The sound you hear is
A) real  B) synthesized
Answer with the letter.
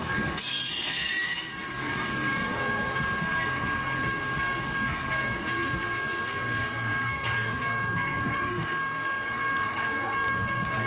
B